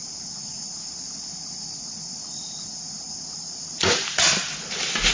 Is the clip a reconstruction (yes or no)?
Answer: no